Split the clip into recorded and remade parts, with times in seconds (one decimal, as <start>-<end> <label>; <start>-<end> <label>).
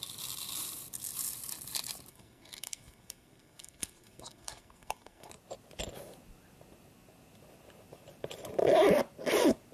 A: 0.0-2.1 recorded; 2.1-5.3 remade; 5.3-9.7 recorded